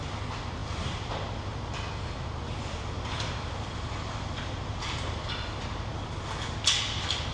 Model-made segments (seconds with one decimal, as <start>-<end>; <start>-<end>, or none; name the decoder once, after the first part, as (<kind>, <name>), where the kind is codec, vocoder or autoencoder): none